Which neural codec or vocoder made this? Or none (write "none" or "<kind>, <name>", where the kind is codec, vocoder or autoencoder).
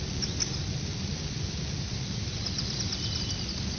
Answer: none